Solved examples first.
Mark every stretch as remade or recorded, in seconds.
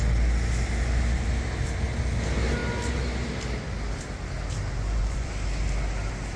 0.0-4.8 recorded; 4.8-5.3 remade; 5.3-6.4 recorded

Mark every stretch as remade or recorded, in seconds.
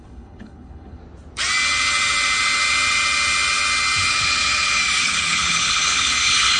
0.0-1.0 remade; 1.0-5.0 recorded; 5.0-6.6 remade